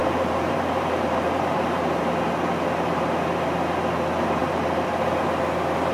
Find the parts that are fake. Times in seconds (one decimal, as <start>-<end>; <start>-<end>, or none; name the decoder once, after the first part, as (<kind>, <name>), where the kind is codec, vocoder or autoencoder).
0.0-2.0 (vocoder, BigVGAN v2); 4.4-5.2

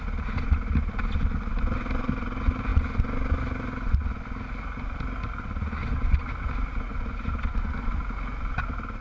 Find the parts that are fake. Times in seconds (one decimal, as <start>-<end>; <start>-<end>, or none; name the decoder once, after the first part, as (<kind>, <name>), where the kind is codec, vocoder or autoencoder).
6.9-7.6 (vocoder, BigVGAN v2)

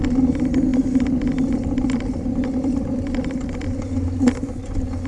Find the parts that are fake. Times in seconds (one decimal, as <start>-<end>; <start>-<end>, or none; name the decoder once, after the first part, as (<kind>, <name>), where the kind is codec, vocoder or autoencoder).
0.7-3.8 (vocoder, BigVGAN v2)

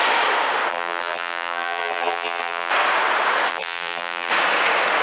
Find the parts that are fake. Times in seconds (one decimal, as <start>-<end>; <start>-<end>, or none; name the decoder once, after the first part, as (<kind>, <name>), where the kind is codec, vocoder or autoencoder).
0.7-2.7 (vocoder, BigVGAN v2); 3.5-4.3

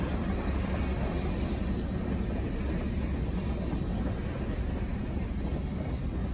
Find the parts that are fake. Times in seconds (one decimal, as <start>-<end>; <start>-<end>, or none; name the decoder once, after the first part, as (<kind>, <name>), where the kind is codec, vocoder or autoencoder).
none